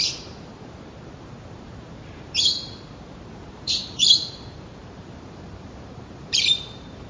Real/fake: fake